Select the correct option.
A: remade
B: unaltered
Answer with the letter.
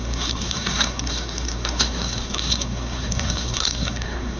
A